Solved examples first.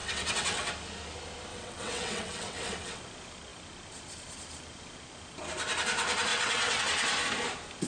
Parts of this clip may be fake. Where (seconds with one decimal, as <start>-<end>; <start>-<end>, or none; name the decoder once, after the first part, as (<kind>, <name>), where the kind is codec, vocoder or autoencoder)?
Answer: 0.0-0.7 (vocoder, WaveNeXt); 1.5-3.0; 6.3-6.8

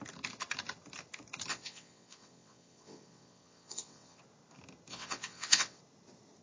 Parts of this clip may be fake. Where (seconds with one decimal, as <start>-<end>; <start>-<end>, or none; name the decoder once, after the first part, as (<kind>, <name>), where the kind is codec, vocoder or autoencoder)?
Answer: 1.5-4.2 (vocoder, WaveNeXt); 4.9-5.8

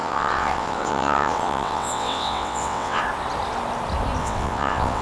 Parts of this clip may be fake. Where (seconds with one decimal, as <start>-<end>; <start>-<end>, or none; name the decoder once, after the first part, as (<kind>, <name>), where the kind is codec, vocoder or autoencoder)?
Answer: 0.0-3.0 (vocoder, WaveNeXt); 4.2-5.0

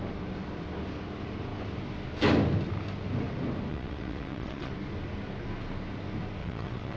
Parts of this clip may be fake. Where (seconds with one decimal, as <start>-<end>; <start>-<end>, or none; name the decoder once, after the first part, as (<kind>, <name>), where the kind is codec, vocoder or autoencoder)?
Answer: 3.7-4.7 (vocoder, WaveNeXt); 6.4-7.0

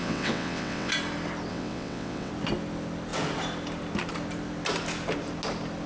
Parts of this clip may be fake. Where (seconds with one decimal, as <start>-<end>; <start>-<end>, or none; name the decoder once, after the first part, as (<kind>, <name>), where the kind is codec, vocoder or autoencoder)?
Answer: 0.0-0.9 (vocoder, WaveNeXt); 1.5-2.3

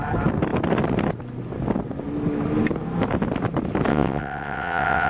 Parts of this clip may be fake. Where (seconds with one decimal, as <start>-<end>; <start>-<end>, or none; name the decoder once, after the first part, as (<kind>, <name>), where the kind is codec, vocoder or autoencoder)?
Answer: 3.9-5.1 (vocoder, WaveNeXt)

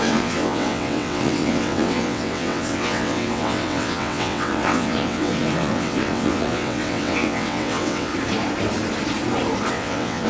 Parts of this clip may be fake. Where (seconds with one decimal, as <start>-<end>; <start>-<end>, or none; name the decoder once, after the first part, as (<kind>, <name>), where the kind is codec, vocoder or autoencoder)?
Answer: 0.0-8.1 (vocoder, WaveNeXt); 9.7-10.3